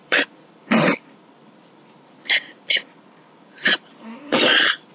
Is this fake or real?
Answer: fake